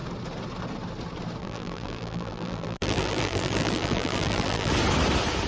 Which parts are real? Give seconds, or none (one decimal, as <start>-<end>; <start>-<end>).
0.0-1.4; 4.7-5.5